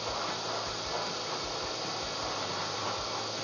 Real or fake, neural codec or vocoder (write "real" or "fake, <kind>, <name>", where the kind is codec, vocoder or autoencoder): real